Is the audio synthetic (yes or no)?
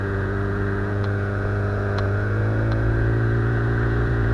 yes